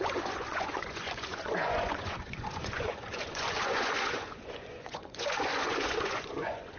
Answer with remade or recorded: remade